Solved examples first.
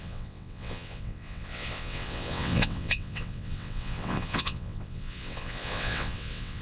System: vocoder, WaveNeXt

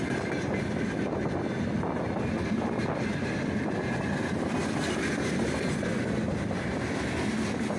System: none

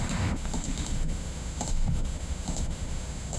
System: autoencoder, DAC-VAE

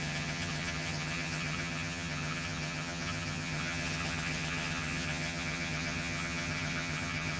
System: vocoder, HiFi-GAN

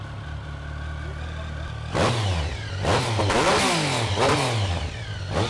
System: none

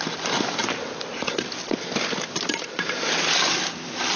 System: none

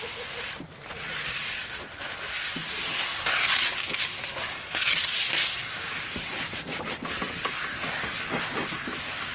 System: none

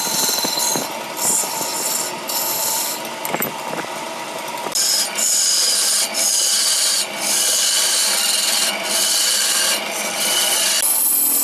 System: none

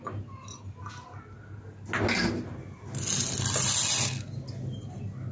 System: none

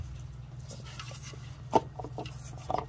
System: none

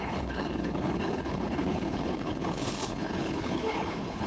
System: codec, HILCodec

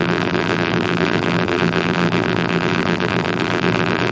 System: vocoder, BigVGAN v2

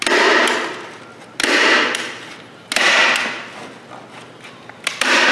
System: none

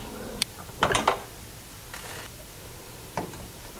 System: vocoder, BigVGAN v2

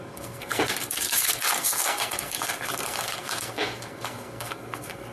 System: codec, SNAC